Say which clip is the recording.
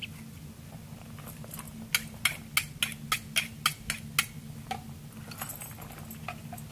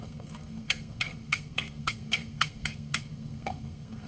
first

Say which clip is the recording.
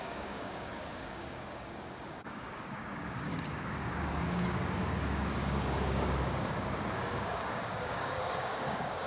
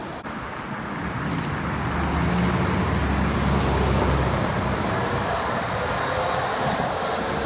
second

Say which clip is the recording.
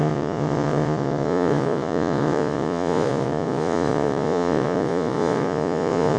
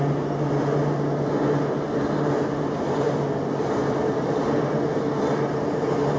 second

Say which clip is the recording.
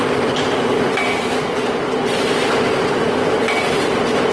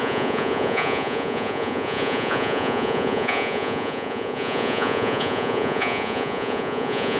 first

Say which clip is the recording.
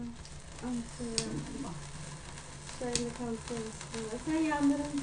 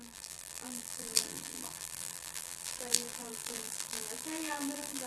first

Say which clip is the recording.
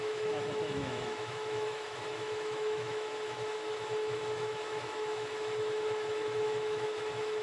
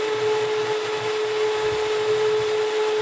second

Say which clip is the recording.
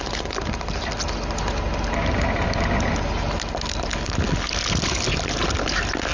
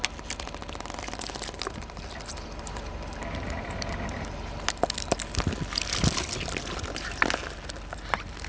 first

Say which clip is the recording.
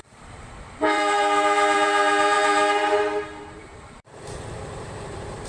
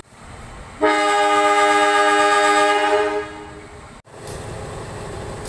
second